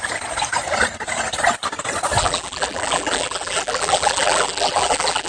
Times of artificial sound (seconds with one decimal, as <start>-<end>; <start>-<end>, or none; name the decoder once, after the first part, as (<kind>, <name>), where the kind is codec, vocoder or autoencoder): 2.2-5.3 (vocoder, BigVGAN v2)